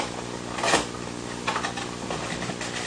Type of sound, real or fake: real